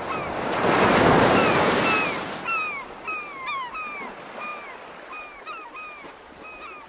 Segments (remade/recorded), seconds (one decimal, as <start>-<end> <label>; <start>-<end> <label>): 0.0-6.9 recorded